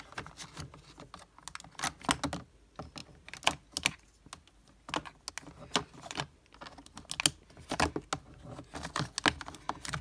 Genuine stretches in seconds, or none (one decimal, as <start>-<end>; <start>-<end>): 0.0-10.0